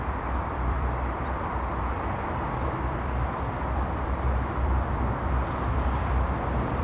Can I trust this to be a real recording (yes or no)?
no